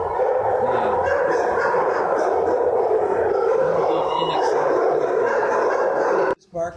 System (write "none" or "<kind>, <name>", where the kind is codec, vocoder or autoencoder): vocoder, BigVGAN v2